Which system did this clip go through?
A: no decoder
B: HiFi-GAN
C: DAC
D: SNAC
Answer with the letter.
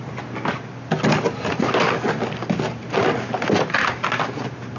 A